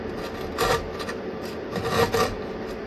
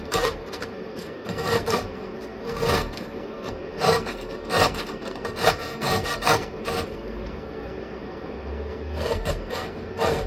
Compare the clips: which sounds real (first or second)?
first